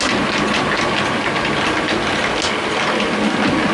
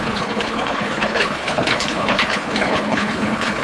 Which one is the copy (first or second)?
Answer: second